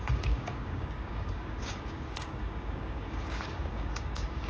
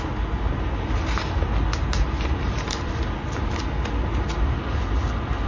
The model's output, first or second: first